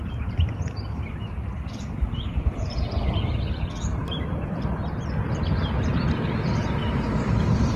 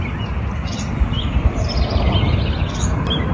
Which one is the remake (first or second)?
first